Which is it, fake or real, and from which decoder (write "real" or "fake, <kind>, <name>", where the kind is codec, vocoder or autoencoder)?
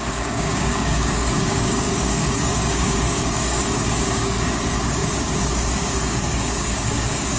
fake, codec, DAC